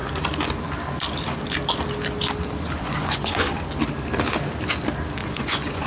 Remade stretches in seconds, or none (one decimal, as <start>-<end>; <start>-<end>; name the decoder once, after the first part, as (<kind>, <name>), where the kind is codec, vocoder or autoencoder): 2.8-3.7 (vocoder, Vocos); 5.2-5.9